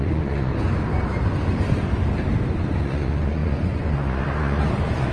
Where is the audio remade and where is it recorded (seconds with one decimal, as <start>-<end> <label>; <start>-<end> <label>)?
0.0-0.5 remade; 0.5-2.7 recorded; 2.7-5.1 remade